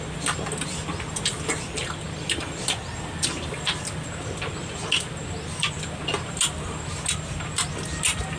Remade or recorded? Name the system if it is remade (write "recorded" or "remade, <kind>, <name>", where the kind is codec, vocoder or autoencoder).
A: recorded